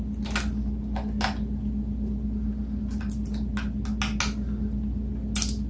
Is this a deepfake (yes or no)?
no